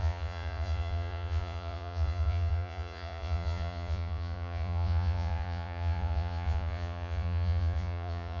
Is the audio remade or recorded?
remade